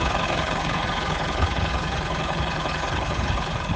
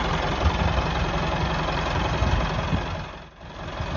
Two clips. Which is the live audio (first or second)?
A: second